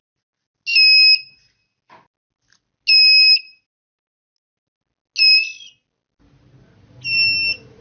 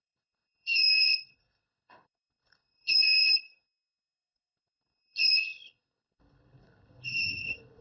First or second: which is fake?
second